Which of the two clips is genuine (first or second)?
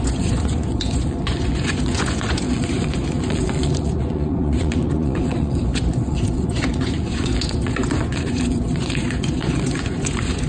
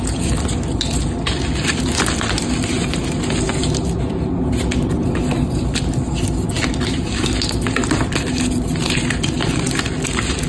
second